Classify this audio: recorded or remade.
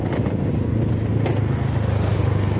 recorded